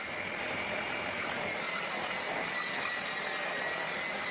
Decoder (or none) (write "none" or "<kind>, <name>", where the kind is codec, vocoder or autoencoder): none